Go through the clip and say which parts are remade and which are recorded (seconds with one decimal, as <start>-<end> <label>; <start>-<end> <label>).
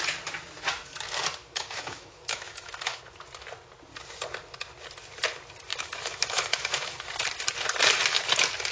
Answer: 0.0-1.4 recorded; 1.4-3.0 remade; 3.0-5.7 recorded; 5.7-7.1 remade; 7.1-8.7 recorded